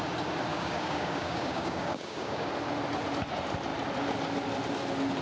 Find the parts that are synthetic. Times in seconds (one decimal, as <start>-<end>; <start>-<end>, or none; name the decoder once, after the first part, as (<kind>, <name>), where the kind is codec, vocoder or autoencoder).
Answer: 0.5-2.5 (codec, DAC)